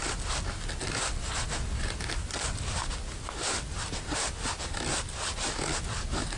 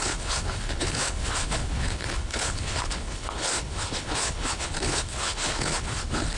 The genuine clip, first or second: first